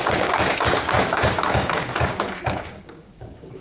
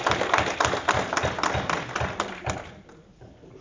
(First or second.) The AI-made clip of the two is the first